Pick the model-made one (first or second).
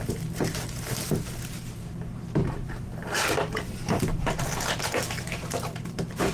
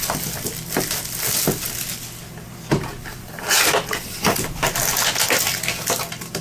first